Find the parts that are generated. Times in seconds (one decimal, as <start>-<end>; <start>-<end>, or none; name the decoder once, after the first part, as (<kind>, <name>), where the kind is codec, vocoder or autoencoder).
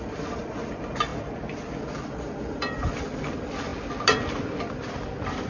0.0-1.1 (vocoder, BigVGAN v2); 1.8-3.7; 4.6-5.5